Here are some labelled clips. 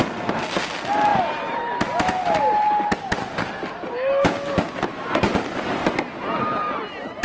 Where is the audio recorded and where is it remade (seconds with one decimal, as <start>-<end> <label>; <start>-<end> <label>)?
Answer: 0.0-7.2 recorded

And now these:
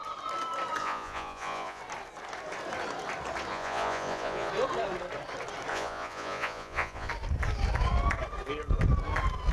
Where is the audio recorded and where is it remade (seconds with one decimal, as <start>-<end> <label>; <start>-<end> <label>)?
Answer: 0.0-0.8 recorded; 0.8-1.8 remade; 1.8-3.5 recorded; 3.5-4.5 remade; 4.5-5.7 recorded; 5.7-7.1 remade; 7.1-9.5 recorded

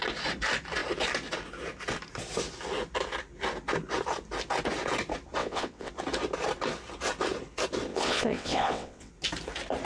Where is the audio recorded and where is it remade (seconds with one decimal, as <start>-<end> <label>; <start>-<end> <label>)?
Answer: 0.0-5.4 recorded; 5.4-5.9 remade; 5.9-7.9 recorded; 7.9-9.1 remade; 9.1-9.8 recorded